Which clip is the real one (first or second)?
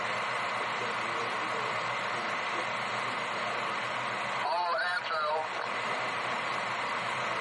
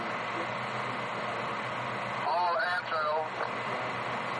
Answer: second